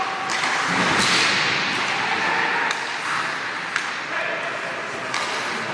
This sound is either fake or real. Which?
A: real